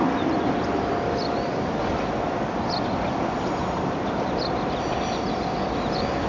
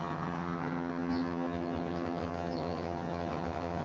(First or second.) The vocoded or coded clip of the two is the second